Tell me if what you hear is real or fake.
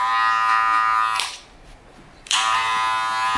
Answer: real